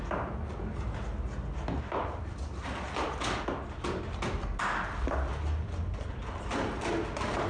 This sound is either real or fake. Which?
real